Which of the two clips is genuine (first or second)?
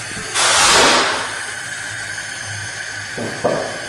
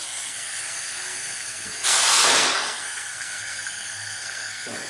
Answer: first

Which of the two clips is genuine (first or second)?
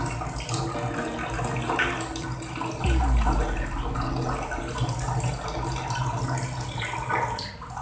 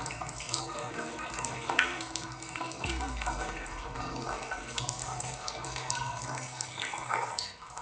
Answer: first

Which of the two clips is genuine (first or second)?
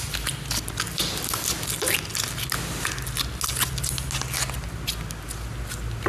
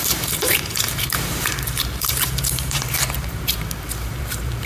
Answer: first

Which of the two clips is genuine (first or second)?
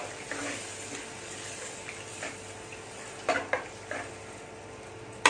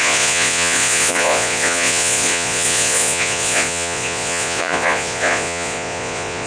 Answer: first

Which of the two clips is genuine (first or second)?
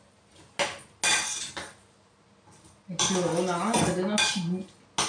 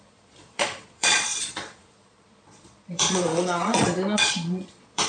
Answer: first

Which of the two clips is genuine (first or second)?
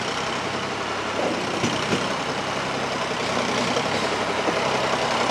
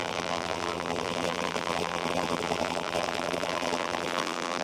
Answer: first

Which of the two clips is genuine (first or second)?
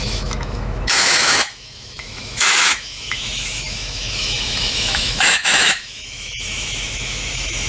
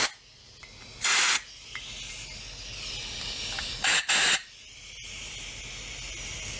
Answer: second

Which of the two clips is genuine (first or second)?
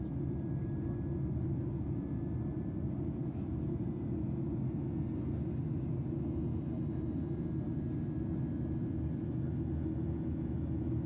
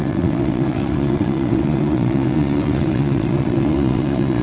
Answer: first